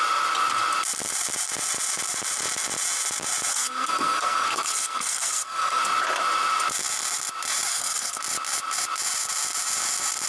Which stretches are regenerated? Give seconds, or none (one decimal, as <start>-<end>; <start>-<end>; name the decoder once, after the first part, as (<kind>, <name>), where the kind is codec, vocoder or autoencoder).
3.5-5.8 (codec, SNAC); 7.7-8.2